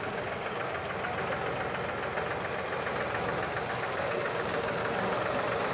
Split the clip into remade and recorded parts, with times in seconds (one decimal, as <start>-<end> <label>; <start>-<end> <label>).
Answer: 0.0-0.8 remade; 0.8-3.7 recorded; 3.7-4.8 remade; 4.8-5.7 recorded